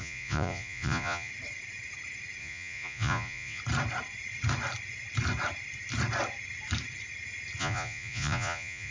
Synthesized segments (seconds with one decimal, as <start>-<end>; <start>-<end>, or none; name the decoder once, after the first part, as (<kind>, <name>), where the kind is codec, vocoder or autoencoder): 0.0-1.3 (vocoder, Vocos); 2.4-3.6; 7.6-8.9